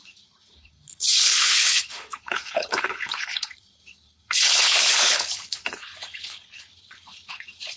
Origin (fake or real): fake